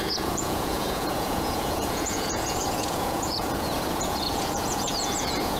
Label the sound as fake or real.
fake